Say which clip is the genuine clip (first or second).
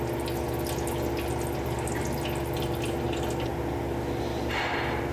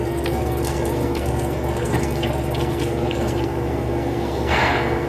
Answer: first